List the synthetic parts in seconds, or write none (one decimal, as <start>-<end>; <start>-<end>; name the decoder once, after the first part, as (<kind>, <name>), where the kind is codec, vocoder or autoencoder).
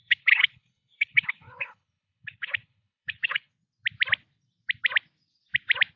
0.0-3.5 (codec, HILCodec)